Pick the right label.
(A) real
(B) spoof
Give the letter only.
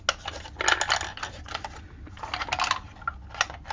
A